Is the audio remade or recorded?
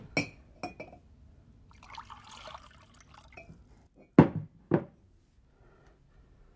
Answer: recorded